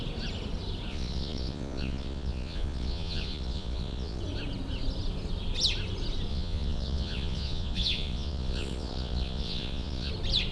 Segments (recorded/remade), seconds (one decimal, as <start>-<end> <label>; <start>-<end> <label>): 0.0-0.9 recorded; 0.9-4.2 remade; 4.2-6.3 recorded; 6.3-10.1 remade; 10.1-10.5 recorded